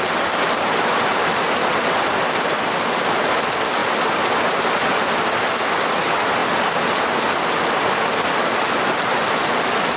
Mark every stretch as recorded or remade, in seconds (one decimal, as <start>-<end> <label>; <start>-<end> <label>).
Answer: 0.0-10.0 recorded